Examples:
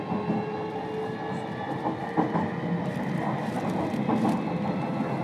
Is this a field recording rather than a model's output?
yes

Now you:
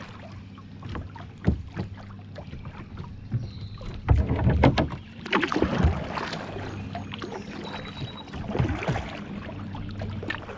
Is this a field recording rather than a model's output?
yes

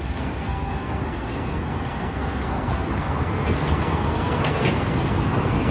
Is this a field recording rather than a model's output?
no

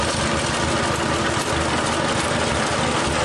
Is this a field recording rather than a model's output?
yes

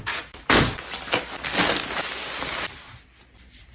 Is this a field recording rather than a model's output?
yes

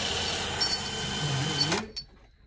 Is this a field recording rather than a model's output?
yes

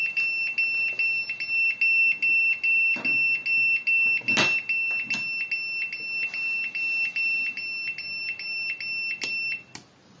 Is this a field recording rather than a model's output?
yes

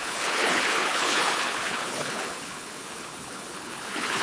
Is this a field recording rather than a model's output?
no